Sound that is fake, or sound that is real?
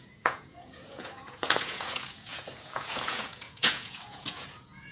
fake